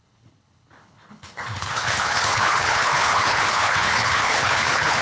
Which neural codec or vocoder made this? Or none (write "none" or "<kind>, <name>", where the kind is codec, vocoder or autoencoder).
codec, HILCodec